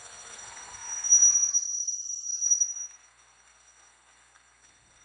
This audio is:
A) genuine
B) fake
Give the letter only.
B